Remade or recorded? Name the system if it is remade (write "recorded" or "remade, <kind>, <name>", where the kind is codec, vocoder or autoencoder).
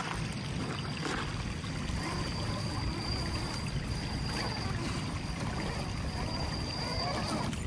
recorded